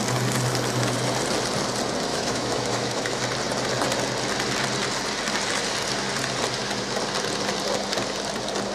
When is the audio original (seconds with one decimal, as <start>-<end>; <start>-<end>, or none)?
0.0-2.1; 3.2-8.7